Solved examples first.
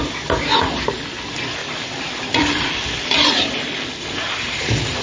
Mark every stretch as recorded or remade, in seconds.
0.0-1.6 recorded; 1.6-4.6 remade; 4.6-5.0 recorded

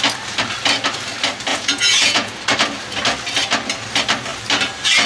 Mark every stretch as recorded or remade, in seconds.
0.0-1.5 recorded; 1.5-2.4 remade; 2.4-5.1 recorded

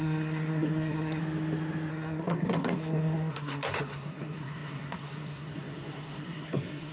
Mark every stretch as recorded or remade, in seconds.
0.0-1.2 remade; 1.2-1.9 recorded; 1.9-6.9 remade

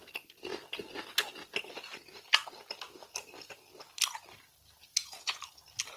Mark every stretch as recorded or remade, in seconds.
0.0-4.8 recorded; 4.8-5.4 remade; 5.4-6.0 recorded

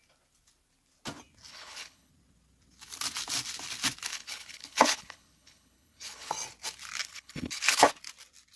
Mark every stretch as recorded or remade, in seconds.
0.0-1.5 recorded; 1.5-2.1 remade; 2.1-4.1 recorded; 4.1-6.3 remade; 6.3-7.0 recorded; 7.0-7.9 remade; 7.9-8.6 recorded

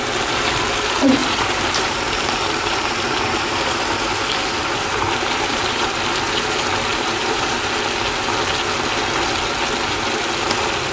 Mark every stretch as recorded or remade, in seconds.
0.0-1.2 recorded; 1.2-5.9 remade; 5.9-6.9 recorded; 6.9-7.5 remade; 7.5-10.9 recorded